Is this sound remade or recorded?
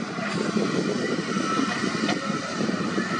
remade